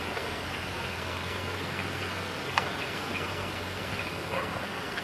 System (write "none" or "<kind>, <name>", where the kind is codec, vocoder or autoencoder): codec, SNAC